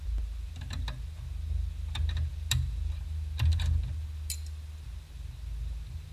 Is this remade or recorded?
recorded